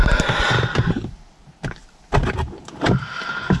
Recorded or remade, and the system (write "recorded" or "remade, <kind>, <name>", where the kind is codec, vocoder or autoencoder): recorded